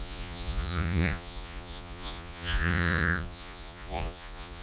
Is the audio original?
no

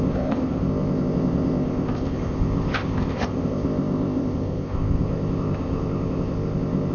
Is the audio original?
no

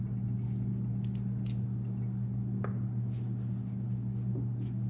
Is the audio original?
yes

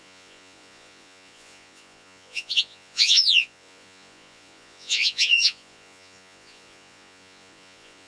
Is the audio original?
no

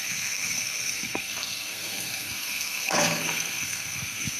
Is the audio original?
no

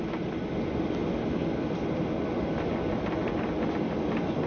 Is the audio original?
yes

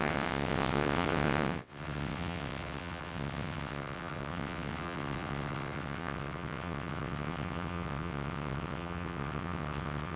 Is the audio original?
no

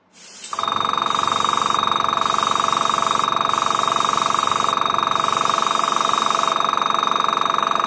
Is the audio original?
yes